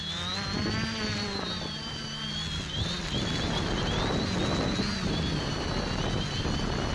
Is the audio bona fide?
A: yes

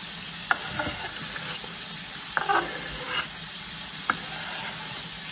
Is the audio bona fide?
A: yes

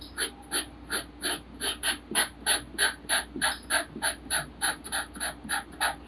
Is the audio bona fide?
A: yes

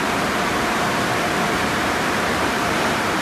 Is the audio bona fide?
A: no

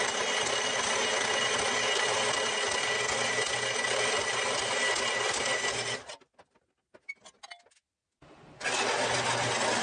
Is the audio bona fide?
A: yes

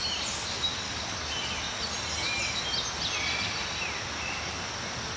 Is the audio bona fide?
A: yes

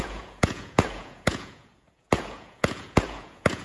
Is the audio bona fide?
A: no